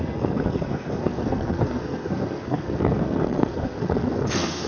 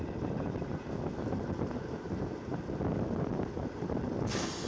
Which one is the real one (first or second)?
second